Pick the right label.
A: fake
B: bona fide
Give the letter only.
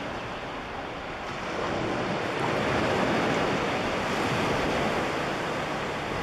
B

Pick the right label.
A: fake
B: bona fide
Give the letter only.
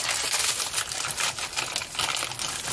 B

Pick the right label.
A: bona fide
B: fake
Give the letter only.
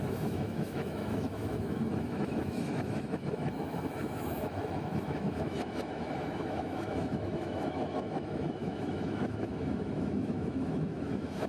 B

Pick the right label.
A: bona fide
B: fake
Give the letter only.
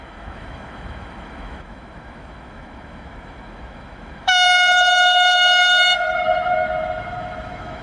B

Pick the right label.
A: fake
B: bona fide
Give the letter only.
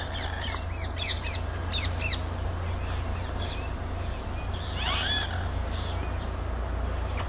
B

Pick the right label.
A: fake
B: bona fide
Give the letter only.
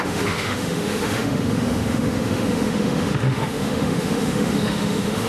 A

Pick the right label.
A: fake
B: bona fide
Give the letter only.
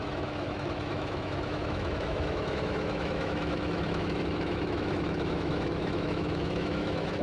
A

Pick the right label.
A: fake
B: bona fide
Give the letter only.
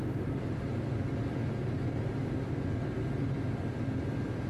B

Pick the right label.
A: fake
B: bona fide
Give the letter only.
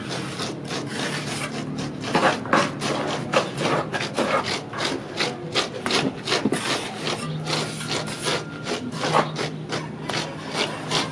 B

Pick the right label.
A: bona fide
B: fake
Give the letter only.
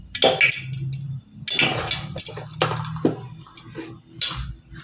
A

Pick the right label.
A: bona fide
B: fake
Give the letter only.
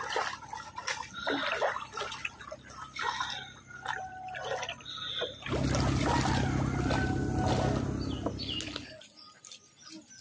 A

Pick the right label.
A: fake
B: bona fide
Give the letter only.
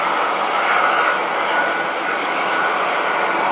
B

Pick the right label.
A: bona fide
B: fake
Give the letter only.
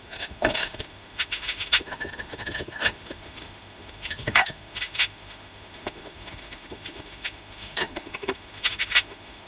B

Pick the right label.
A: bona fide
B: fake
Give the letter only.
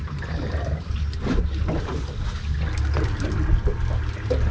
A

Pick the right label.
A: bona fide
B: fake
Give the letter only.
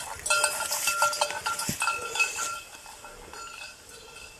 A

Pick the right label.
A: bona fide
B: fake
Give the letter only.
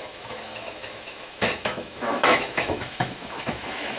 B